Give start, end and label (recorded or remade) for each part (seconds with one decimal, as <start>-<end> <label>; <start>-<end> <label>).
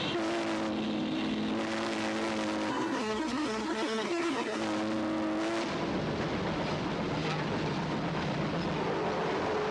0.0-2.7 recorded; 2.7-4.6 remade; 4.6-9.7 recorded